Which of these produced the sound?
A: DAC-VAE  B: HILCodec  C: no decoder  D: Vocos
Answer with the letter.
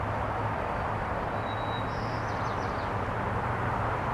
C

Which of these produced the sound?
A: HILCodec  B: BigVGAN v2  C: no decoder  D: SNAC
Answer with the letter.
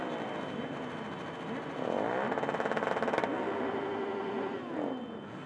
C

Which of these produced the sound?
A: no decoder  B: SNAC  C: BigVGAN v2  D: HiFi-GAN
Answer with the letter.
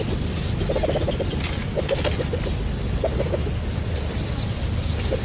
A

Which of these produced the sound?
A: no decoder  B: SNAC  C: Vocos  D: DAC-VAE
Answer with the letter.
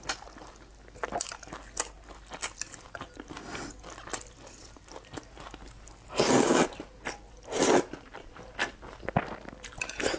A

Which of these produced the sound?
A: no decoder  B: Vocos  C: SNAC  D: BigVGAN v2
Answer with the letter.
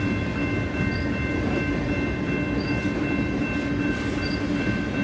A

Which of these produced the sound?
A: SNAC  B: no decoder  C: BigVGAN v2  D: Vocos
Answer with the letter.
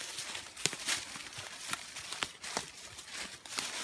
B